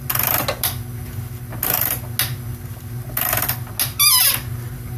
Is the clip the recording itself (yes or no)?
yes